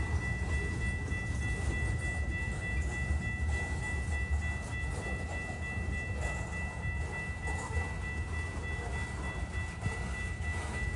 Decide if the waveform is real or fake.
real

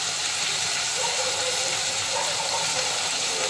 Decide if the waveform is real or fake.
real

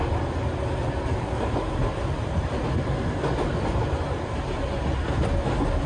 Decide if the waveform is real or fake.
real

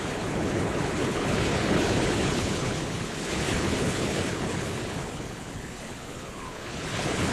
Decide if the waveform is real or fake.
fake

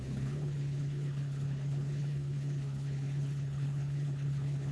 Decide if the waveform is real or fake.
fake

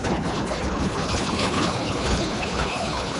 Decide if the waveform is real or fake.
fake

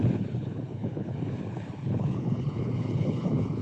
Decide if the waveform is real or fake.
fake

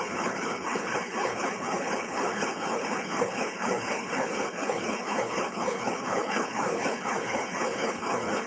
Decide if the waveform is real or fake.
fake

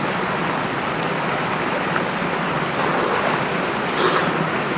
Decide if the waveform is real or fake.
real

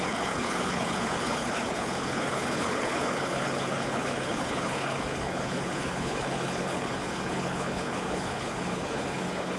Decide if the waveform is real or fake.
fake